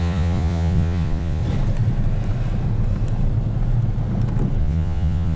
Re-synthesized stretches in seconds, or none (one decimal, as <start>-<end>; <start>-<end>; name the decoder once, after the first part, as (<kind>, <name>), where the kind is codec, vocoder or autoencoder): 0.0-1.4 (vocoder, Vocos); 4.6-5.4